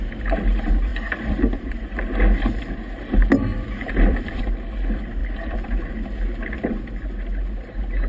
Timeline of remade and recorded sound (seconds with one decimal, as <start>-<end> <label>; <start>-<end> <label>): 0.0-0.9 recorded; 0.9-2.0 remade; 2.0-3.5 recorded; 3.5-4.4 remade; 4.4-5.2 recorded; 5.2-5.7 remade; 5.7-8.1 recorded